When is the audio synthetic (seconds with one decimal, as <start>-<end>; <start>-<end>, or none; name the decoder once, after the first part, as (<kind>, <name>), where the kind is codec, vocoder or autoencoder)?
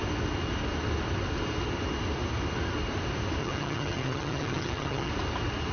3.4-5.1 (vocoder, HiFi-GAN)